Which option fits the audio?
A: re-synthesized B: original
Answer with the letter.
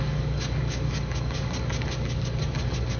A